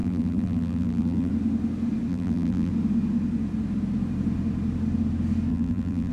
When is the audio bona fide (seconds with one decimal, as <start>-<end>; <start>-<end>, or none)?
1.3-2.1; 2.7-5.5